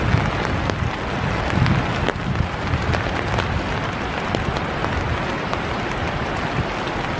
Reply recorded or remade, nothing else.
recorded